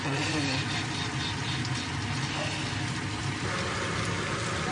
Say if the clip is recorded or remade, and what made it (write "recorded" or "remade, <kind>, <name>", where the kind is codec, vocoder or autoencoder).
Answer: recorded